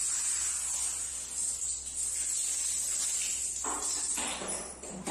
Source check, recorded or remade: recorded